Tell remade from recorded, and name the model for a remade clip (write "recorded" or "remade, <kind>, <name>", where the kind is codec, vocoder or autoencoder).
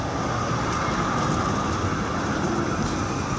recorded